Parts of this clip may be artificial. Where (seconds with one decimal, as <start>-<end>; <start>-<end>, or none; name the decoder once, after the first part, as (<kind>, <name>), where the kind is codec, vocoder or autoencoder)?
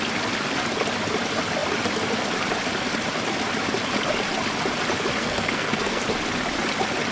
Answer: 5.2-6.0 (codec, SNAC)